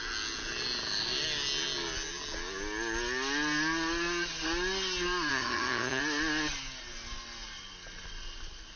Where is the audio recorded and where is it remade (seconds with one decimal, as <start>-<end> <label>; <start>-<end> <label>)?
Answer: 0.0-5.3 recorded; 5.3-6.0 remade; 6.0-8.8 recorded